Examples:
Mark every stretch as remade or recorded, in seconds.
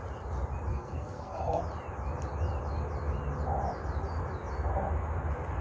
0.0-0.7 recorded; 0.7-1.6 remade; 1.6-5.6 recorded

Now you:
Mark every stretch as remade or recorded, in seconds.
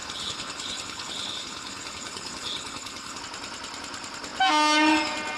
0.0-3.2 remade; 3.2-5.4 recorded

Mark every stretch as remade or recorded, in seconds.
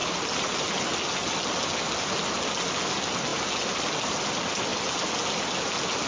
0.0-6.1 recorded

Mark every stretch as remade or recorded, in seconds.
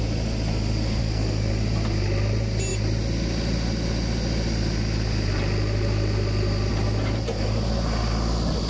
0.0-1.0 recorded; 1.0-1.5 remade; 1.5-8.7 recorded